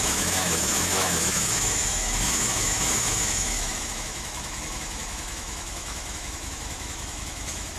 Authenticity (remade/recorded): remade